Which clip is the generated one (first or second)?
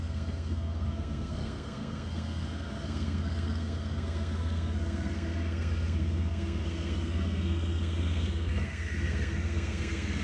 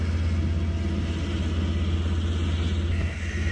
first